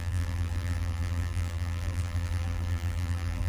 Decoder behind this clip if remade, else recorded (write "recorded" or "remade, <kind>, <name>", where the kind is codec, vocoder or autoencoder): remade, vocoder, BigVGAN v2